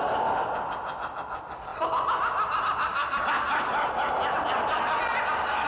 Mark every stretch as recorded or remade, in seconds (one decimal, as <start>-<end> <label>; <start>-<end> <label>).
0.0-5.7 recorded